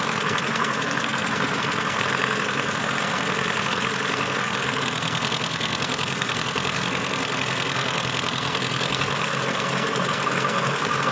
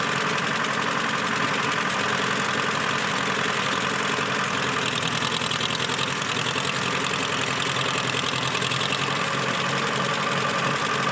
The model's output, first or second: first